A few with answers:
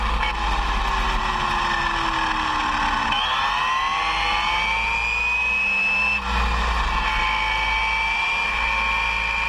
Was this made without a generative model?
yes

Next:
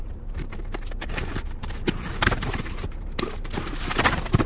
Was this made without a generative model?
no